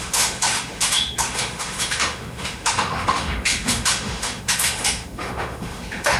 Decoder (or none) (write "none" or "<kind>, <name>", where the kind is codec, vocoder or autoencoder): autoencoder, DAC-VAE